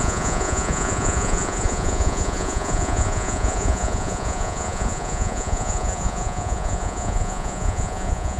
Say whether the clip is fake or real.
fake